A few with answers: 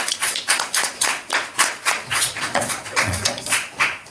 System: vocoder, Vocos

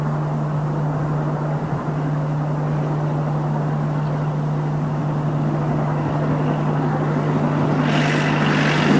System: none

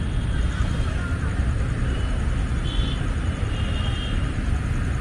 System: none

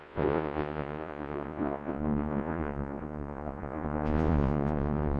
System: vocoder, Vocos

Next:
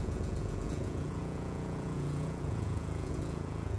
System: vocoder, Vocos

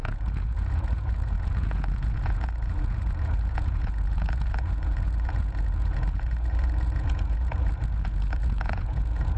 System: vocoder, Vocos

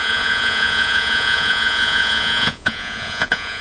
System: vocoder, Vocos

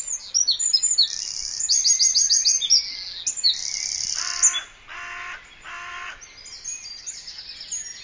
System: none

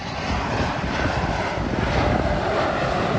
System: none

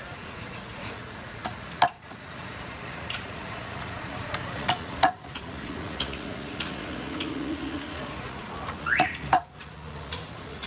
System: vocoder, Vocos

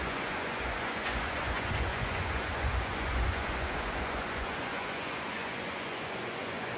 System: vocoder, Vocos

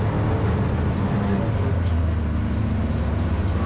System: none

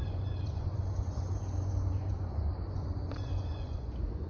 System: vocoder, Vocos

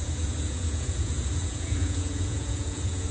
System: vocoder, Vocos